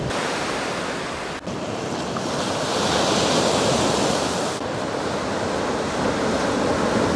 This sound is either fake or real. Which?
real